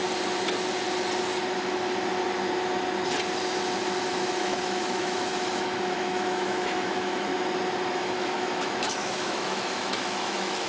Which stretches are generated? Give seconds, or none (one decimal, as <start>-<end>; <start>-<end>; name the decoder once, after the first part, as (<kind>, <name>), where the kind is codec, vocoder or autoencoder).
4.1-7.3 (autoencoder, DAC-VAE); 7.9-10.7